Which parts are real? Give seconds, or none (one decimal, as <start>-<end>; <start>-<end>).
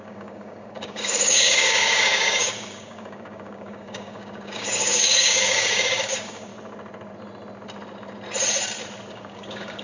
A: 6.5-9.1